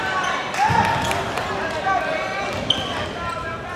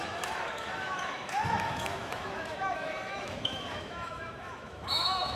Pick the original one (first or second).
first